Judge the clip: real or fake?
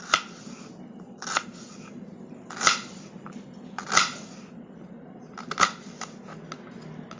real